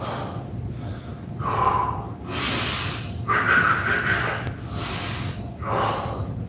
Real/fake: real